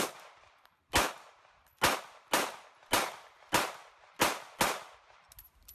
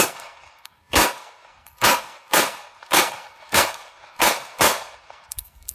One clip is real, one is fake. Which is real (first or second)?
first